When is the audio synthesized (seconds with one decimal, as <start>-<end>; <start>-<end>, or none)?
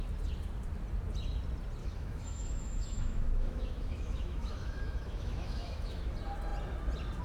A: 1.8-6.1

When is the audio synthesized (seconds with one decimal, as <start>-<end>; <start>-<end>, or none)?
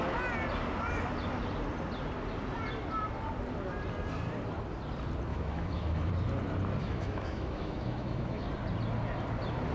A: 5.3-6.1; 6.8-8.5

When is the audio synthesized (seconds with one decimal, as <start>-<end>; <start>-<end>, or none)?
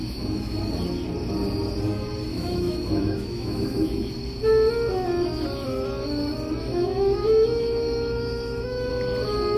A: 0.0-0.6; 2.3-4.1; 6.6-8.9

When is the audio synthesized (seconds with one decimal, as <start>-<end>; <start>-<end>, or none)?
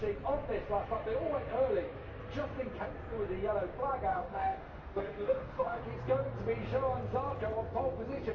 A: 4.1-5.8